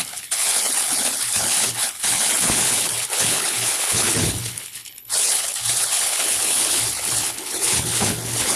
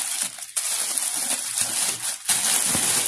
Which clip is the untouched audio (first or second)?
second